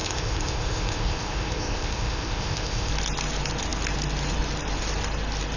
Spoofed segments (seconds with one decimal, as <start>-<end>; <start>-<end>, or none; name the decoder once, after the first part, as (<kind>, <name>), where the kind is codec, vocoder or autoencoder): 0.0-2.9 (codec, ZipCodec)